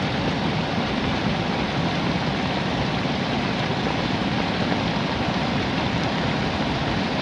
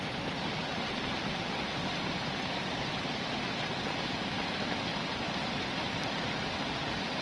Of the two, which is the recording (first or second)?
second